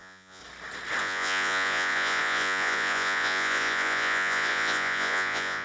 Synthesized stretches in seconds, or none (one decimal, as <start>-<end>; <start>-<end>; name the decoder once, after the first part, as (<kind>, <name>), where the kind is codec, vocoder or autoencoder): 0.0-0.4 (vocoder, Vocos); 1.0-5.6